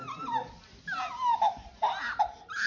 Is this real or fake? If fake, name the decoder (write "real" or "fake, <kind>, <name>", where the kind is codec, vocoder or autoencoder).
real